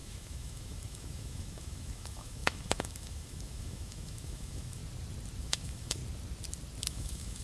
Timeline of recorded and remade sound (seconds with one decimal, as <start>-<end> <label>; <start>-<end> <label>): 0.0-4.8 remade; 4.8-5.4 recorded; 5.4-6.0 remade; 6.0-6.9 recorded; 6.9-7.4 remade